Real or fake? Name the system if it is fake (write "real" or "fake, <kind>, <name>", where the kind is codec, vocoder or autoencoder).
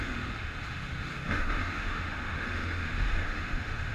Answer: fake, autoencoder, DAC-VAE